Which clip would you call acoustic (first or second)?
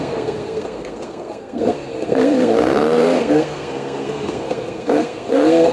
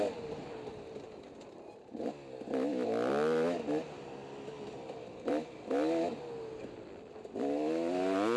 second